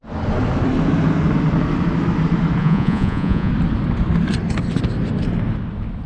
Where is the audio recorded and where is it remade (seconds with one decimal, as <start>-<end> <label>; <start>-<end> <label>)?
0.0-2.6 recorded; 2.6-3.5 remade; 3.5-6.1 recorded